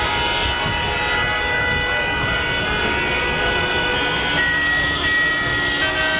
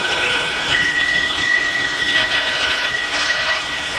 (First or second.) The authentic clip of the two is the first